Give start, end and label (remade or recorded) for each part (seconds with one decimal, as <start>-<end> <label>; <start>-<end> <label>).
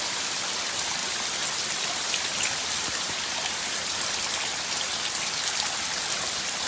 0.0-6.7 recorded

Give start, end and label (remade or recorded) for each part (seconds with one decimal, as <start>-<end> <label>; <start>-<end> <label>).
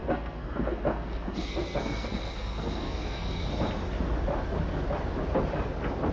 0.0-3.5 remade; 3.5-6.1 recorded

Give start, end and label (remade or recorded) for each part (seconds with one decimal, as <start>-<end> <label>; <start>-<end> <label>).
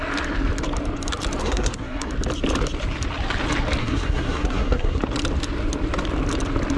0.0-1.4 recorded; 1.4-2.1 remade; 2.1-3.8 recorded; 3.8-5.0 remade; 5.0-6.8 recorded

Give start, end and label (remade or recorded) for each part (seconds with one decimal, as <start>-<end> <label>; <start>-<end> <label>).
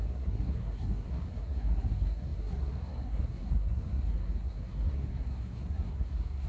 0.0-6.5 remade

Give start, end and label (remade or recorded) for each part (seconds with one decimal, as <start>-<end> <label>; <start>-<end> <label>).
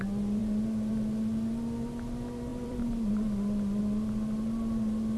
0.0-2.5 recorded; 2.5-3.8 remade; 3.8-5.2 recorded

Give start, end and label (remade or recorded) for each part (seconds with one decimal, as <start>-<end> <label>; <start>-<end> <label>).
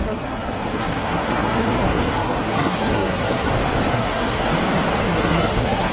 0.0-3.5 remade; 3.5-3.9 recorded; 3.9-4.5 remade; 4.5-5.0 recorded; 5.0-5.9 remade